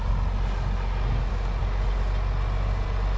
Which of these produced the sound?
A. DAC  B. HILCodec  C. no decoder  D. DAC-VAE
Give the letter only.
C